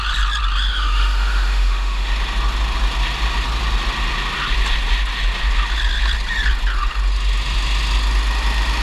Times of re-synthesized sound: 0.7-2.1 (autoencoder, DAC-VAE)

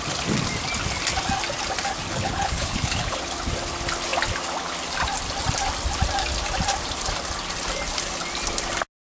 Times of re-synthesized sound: 2.1-3.2 (codec, HILCodec)